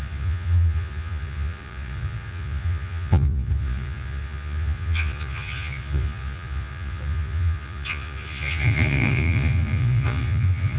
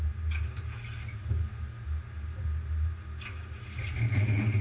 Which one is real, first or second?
second